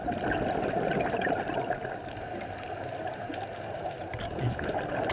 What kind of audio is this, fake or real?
real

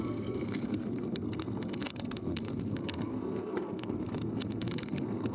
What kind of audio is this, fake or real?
fake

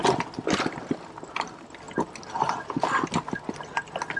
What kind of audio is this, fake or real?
real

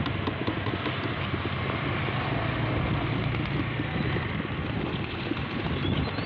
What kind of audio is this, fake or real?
real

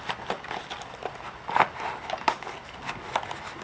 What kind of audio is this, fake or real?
real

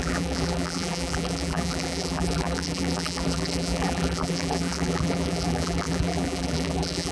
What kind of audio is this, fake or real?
fake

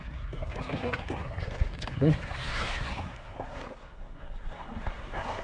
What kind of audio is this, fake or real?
fake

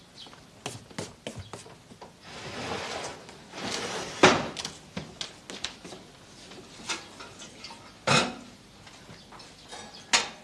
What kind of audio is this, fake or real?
real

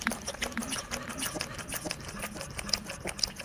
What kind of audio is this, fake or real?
real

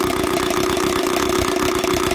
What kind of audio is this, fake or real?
fake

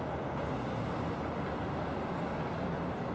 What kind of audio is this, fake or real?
real